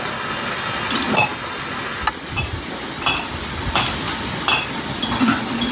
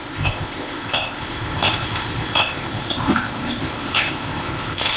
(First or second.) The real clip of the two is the first